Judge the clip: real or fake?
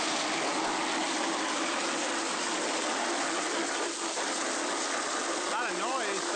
real